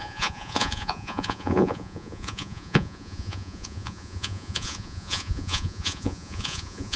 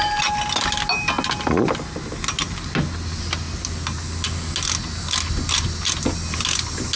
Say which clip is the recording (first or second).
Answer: second